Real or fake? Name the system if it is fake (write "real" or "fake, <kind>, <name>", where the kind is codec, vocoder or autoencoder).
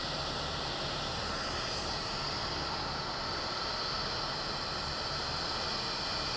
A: fake, vocoder, BigVGAN v2